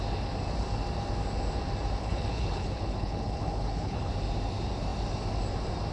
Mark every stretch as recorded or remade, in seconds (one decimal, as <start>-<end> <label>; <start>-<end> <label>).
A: 0.0-2.0 recorded; 2.0-4.1 remade; 4.1-5.9 recorded